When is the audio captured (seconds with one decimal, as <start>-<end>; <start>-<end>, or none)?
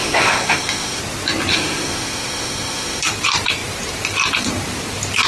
1.0-1.5; 3.0-5.3